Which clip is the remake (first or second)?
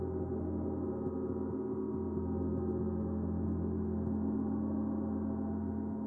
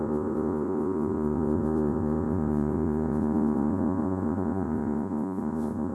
second